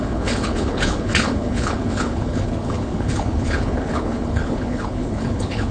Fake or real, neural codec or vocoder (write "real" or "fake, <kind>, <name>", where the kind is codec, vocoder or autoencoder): fake, codec, HILCodec